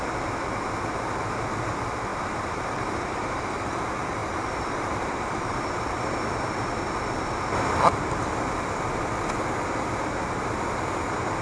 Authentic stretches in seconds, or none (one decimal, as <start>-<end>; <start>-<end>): 0.0-2.1; 3.7-4.2; 6.1-11.4